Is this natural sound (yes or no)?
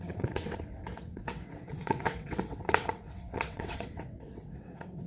no